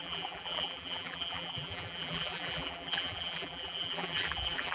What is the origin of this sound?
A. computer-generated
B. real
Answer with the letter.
A